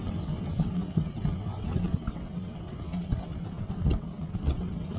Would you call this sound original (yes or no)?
no